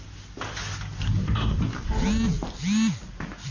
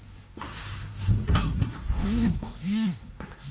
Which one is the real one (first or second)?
first